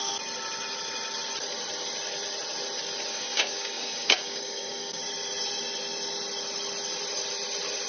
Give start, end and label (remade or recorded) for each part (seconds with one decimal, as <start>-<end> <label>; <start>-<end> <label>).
0.0-3.1 recorded; 3.1-5.0 remade; 5.0-7.9 recorded

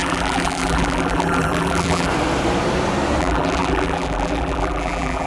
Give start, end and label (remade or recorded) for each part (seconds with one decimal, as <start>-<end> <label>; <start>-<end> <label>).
0.0-2.1 remade; 2.1-3.2 recorded; 3.2-5.3 remade